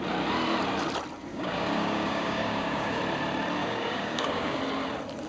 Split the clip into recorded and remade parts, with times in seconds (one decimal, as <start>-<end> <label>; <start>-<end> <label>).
0.0-1.3 recorded; 1.3-3.0 remade; 3.0-3.6 recorded; 3.6-4.6 remade; 4.6-5.3 recorded